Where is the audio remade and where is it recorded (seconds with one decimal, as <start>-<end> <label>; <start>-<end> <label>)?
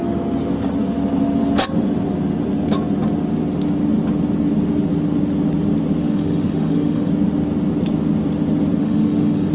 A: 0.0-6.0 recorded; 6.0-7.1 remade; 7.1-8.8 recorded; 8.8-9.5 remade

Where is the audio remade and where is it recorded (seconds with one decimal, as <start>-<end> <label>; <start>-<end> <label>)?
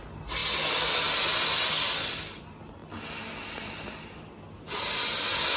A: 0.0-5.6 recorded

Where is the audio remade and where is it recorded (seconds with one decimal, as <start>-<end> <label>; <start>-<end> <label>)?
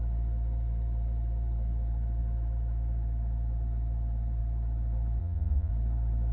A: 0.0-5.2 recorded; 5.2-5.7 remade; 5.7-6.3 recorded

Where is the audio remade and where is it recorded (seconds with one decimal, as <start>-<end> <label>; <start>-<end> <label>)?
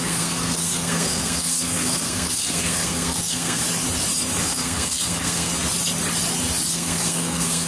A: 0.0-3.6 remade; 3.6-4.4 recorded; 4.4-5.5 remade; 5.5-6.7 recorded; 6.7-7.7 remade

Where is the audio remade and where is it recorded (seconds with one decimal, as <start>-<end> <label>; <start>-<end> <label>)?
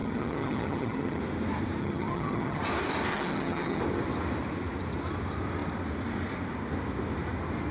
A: 0.0-1.2 remade; 1.2-1.8 recorded; 1.8-2.6 remade; 2.6-3.1 recorded; 3.1-3.8 remade; 3.8-7.7 recorded